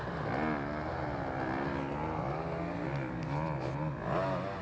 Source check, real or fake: real